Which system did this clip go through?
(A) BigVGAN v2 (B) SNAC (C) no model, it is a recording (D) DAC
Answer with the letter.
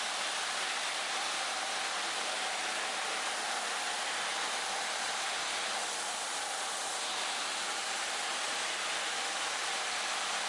C